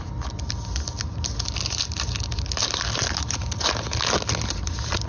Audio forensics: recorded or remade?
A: recorded